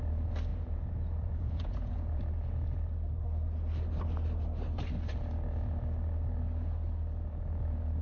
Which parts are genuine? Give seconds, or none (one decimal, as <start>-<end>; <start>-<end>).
0.0-0.5; 2.2-8.0